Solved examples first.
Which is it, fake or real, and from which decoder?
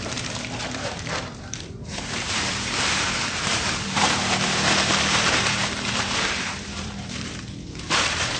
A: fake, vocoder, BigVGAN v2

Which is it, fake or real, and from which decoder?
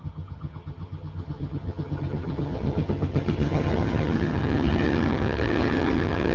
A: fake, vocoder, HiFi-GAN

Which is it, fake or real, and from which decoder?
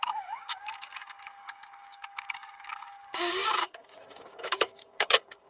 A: fake, codec, DAC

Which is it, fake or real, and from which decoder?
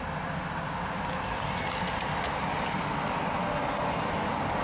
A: real